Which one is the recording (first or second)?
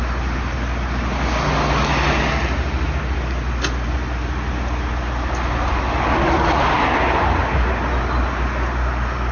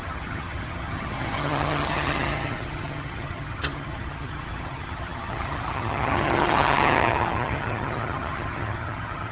first